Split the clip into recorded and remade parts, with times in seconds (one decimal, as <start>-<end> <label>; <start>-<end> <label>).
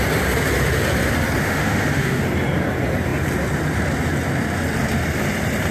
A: 0.0-1.4 recorded; 1.4-2.2 remade; 2.2-5.7 recorded